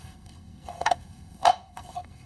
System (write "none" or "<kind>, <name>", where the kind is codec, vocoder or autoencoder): codec, SNAC